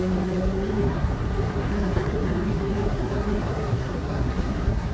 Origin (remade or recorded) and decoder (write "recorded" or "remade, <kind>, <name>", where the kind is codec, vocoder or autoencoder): remade, codec, SNAC